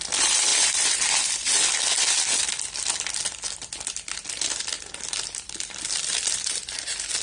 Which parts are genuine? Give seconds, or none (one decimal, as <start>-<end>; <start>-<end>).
1.9-4.8